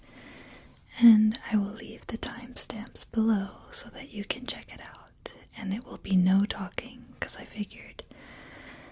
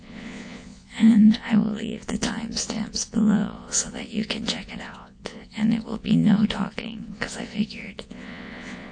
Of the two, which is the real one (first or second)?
first